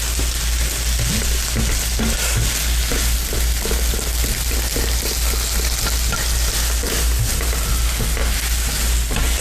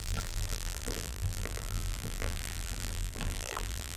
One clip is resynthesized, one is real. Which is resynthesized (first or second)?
second